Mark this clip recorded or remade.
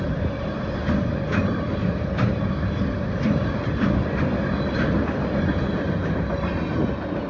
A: recorded